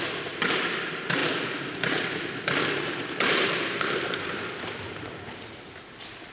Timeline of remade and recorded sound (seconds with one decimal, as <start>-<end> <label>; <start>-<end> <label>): 0.0-6.3 recorded